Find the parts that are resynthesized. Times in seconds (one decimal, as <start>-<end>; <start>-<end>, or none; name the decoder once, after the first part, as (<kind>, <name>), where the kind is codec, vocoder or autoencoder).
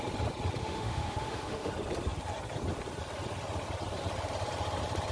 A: 0.6-1.7 (autoencoder, DAC-VAE)